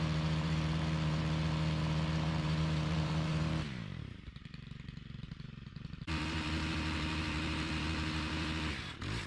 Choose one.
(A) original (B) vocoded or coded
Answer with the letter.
B